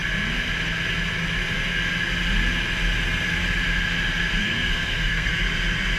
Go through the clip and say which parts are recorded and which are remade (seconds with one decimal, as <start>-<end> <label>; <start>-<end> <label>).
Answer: 0.0-4.4 recorded; 4.4-5.3 remade; 5.3-6.0 recorded